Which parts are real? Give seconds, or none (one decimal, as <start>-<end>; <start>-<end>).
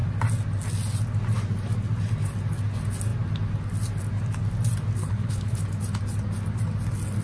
0.0-5.0; 5.6-7.2